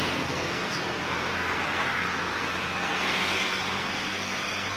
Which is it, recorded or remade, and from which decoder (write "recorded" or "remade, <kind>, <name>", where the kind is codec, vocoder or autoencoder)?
remade, codec, SNAC